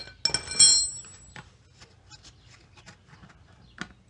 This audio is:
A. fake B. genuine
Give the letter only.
B